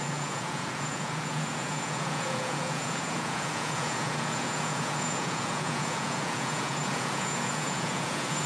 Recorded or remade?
remade